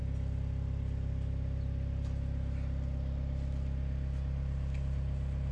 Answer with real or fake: real